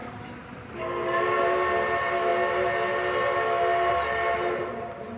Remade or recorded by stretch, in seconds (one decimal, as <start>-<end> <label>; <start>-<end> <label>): 0.0-0.8 remade; 0.8-5.2 recorded